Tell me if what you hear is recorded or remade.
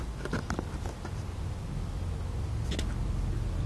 recorded